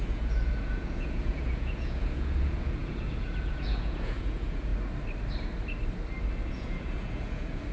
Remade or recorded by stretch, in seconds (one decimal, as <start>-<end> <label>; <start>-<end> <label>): 0.0-4.7 remade; 4.7-6.5 recorded; 6.5-7.7 remade